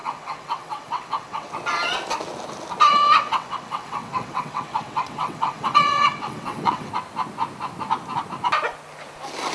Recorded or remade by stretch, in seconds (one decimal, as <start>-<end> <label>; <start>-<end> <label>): 0.0-1.5 remade; 1.5-2.9 recorded; 2.9-6.9 remade; 6.9-9.5 recorded